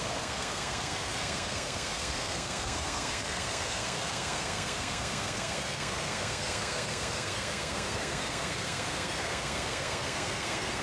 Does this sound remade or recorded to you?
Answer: remade